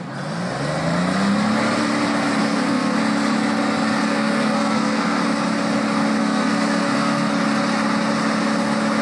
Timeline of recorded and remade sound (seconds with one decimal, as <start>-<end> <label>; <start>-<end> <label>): 0.0-2.4 recorded; 2.4-3.0 remade; 3.0-4.0 recorded; 4.0-5.2 remade; 5.2-6.2 recorded; 6.2-7.3 remade; 7.3-9.0 recorded